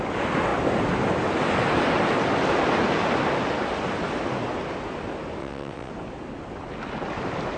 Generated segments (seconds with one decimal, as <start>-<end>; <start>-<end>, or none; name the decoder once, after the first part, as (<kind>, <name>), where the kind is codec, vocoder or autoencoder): 5.4-5.9 (vocoder, WaveNeXt)